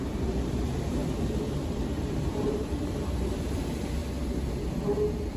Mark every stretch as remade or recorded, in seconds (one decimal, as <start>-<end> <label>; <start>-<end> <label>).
0.0-1.0 remade; 1.0-1.5 recorded; 1.5-4.0 remade; 4.0-5.4 recorded

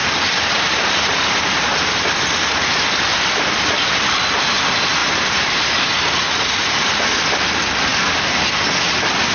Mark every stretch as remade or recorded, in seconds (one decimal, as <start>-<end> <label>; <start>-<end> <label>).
0.0-1.7 remade; 1.7-5.0 recorded; 5.0-7.0 remade; 7.0-9.3 recorded

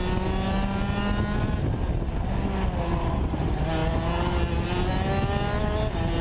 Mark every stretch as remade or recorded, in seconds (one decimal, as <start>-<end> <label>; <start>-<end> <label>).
0.0-6.2 recorded

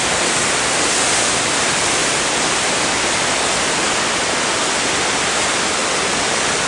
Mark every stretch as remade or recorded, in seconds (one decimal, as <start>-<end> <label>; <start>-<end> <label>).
0.0-6.7 recorded

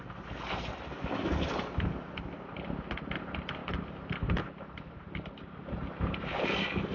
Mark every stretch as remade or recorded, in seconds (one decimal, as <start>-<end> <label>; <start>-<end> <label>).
0.0-3.6 recorded; 3.6-5.3 remade; 5.3-6.9 recorded